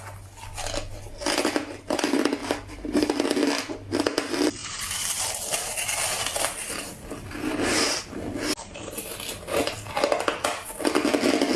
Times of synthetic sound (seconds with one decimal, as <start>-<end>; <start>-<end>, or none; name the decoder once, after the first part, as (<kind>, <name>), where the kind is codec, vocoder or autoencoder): 2.4-3.1 (vocoder, BigVGAN v2); 4.6-5.8